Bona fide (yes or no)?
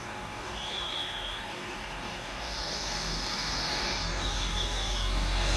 no